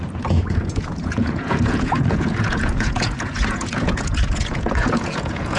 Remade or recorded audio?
remade